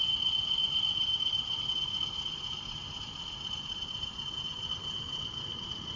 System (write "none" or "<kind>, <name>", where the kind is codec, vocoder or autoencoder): none